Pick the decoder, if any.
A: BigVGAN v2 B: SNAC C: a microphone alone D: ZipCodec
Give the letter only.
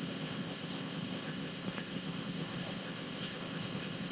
D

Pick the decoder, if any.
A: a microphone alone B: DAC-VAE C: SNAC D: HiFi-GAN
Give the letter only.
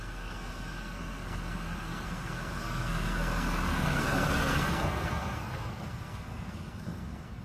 C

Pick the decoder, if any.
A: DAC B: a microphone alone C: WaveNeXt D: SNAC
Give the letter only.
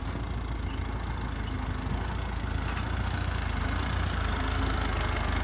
B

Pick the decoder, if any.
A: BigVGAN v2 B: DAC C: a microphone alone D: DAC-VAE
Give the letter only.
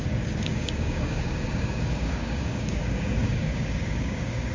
B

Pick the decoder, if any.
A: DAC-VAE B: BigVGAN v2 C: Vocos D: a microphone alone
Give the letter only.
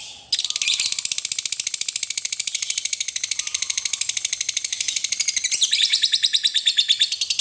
D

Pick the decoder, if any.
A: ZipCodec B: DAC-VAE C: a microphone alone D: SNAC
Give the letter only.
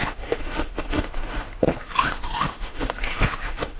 B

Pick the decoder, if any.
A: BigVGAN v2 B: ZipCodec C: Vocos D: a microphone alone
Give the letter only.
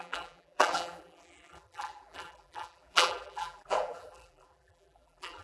A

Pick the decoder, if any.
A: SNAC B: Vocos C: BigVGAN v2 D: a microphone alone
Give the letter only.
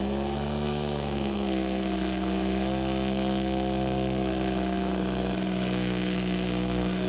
A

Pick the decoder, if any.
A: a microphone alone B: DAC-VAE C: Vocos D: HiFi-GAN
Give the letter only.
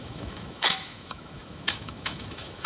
B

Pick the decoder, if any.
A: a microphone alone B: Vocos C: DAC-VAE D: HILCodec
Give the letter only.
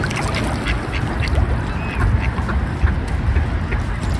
A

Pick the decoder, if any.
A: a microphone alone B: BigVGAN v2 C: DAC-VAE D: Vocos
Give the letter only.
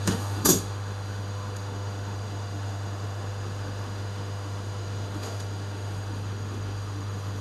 C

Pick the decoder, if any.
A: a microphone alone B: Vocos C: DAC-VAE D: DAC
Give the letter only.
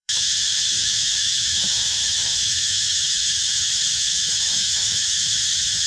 C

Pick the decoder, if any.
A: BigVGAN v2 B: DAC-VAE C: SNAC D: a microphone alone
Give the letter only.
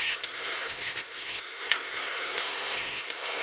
C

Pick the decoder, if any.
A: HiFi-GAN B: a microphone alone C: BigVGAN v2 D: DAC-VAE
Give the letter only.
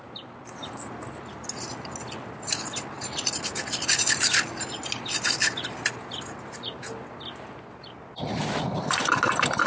B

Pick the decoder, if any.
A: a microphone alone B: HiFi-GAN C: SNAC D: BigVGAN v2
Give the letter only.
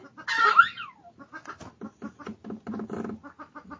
A